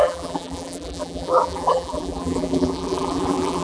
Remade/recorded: remade